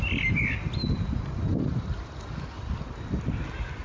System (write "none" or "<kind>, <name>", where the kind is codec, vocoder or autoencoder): none